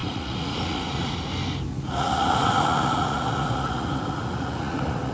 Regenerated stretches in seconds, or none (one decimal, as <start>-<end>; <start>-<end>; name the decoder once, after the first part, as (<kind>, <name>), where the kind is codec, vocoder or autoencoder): 0.0-1.1 (vocoder, Vocos); 1.7-5.1